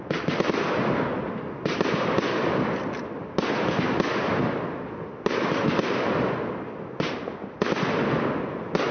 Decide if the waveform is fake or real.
real